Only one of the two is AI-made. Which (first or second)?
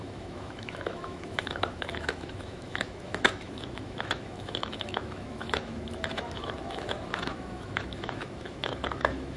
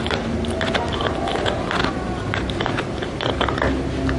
first